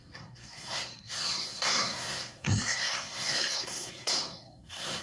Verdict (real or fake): fake